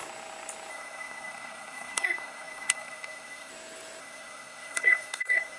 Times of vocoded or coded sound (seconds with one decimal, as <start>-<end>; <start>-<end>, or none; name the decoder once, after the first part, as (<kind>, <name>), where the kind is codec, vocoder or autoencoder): 0.7-3.5 (codec, SNAC); 4.0-5.6

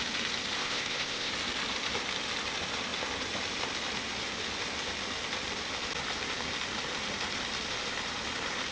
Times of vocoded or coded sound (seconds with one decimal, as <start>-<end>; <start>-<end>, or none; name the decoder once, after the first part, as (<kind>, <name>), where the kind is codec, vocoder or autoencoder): 0.6-1.3 (codec, ZipCodec)